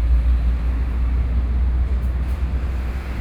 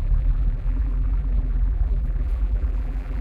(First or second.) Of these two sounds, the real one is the first